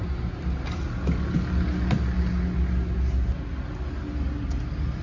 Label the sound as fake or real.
real